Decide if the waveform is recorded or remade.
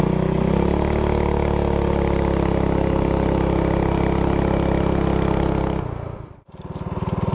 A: recorded